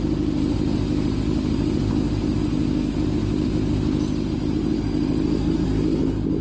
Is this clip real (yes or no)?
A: yes